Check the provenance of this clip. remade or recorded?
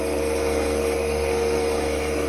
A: remade